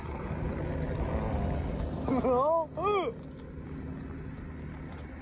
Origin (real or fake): real